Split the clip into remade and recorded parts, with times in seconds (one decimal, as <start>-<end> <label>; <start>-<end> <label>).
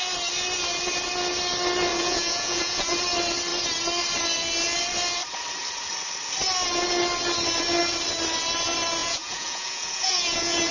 0.0-1.9 recorded; 1.9-3.0 remade; 3.0-9.0 recorded; 9.0-10.7 remade